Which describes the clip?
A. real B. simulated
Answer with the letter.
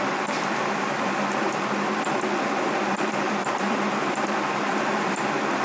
B